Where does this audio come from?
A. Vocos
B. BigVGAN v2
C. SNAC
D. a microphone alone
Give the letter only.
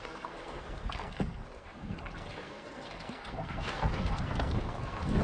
C